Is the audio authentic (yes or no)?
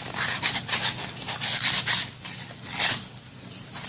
yes